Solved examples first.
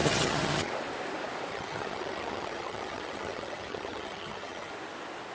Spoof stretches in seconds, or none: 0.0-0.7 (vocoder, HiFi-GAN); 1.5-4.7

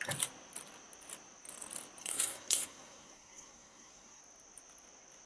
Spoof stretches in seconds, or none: 2.0-4.2 (codec, SNAC)

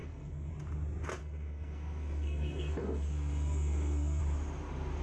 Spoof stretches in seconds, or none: 0.0-0.5 (codec, SNAC); 1.2-4.2

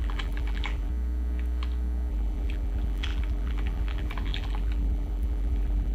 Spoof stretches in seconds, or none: 0.0-0.9 (vocoder, BigVGAN v2); 2.1-5.9